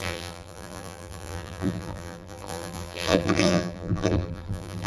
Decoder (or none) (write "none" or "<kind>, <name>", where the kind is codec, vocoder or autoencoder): vocoder, BigVGAN v2